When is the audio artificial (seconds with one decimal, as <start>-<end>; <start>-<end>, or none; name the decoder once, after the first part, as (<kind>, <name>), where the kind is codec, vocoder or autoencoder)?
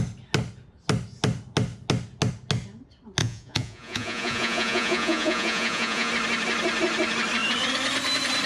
3.2-6.1 (vocoder, Vocos)